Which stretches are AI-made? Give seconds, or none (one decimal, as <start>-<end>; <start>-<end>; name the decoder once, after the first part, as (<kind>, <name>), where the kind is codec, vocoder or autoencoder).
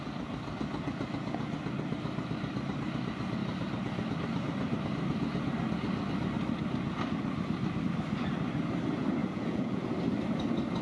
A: 9.2-9.8 (vocoder, Vocos)